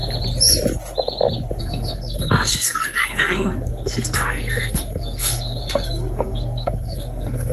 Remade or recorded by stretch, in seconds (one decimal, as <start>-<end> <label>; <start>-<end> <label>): 0.0-1.6 recorded; 1.6-7.5 remade